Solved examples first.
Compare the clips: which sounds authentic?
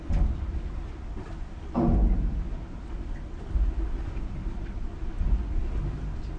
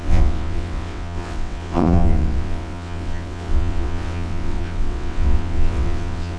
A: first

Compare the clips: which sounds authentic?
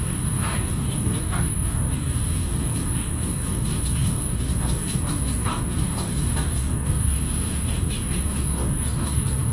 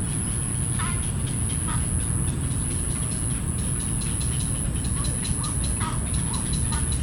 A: second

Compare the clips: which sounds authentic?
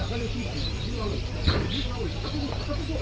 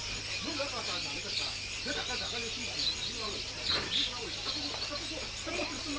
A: second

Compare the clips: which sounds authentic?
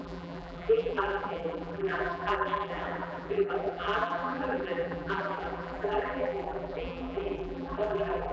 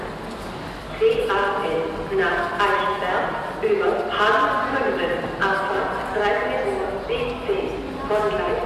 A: second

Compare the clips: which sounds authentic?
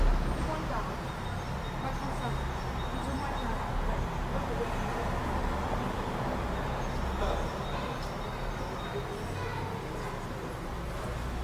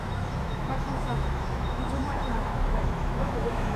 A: first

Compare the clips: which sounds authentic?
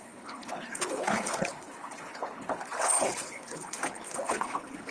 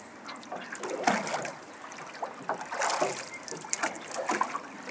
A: second